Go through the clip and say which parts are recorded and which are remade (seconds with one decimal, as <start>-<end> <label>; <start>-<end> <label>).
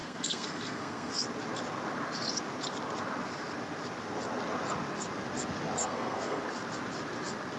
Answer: 0.0-1.1 remade; 1.1-5.8 recorded; 5.8-6.4 remade; 6.4-7.6 recorded